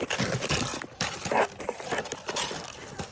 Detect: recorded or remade recorded